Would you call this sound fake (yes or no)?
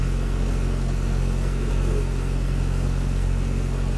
yes